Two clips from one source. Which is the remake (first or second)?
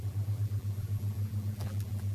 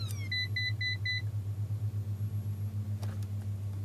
first